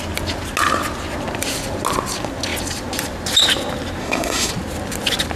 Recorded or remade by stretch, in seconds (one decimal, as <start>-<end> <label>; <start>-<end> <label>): 0.0-4.0 recorded; 4.0-4.5 remade; 4.5-5.4 recorded